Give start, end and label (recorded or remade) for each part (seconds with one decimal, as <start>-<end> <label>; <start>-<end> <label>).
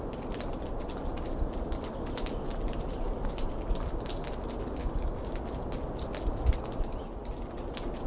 0.0-4.8 recorded; 4.8-5.4 remade; 5.4-8.1 recorded